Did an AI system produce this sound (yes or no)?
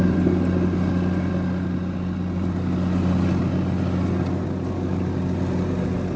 no